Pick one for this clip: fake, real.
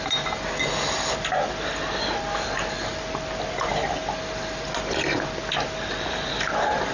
real